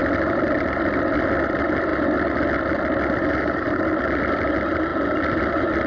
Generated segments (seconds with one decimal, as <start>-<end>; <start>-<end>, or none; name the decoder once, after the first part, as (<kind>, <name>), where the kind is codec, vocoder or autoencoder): 0.0-1.9 (vocoder, BigVGAN v2); 4.2-4.9

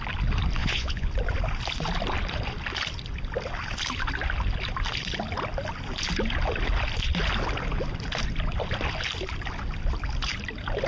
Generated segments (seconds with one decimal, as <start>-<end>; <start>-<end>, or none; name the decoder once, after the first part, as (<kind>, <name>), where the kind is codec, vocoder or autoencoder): 0.6-1.1 (vocoder, Vocos)

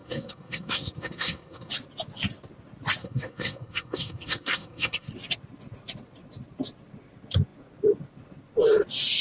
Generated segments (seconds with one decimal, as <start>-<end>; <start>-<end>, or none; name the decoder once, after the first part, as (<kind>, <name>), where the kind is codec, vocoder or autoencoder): 0.0-1.7 (codec, SNAC); 3.0-5.1

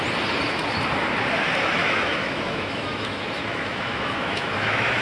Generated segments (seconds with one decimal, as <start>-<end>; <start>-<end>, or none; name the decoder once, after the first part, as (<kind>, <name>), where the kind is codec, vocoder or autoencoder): 1.8-5.0 (autoencoder, DAC-VAE)

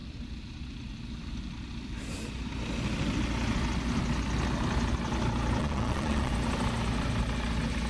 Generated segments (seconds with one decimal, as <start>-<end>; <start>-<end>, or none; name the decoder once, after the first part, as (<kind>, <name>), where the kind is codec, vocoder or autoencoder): 5.6-6.3 (vocoder, Vocos)